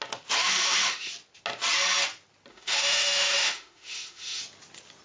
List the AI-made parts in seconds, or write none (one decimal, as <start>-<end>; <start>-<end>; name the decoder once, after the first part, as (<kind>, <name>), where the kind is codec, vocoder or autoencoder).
0.4-1.1 (autoencoder, DAC-VAE); 2.5-4.4